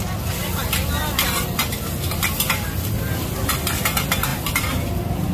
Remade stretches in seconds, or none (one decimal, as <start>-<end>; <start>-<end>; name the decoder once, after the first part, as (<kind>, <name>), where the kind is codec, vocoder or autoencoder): 4.3-4.8 (vocoder, BigVGAN v2)